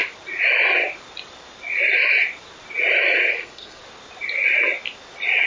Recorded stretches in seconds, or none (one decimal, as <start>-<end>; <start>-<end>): 0.0-3.3; 3.8-5.5